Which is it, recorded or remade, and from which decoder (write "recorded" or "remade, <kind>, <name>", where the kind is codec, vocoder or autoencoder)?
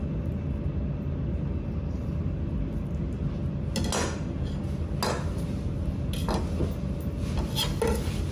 recorded